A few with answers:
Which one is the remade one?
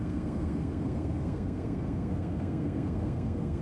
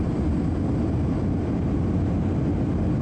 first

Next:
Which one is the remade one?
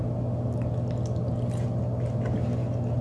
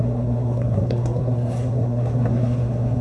second